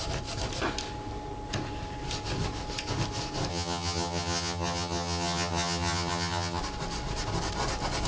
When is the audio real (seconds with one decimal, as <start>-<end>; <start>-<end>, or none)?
0.0-3.5; 6.6-8.1